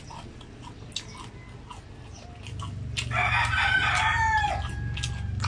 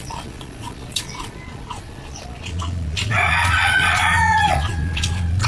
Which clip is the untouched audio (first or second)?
first